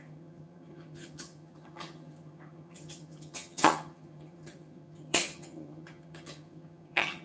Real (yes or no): no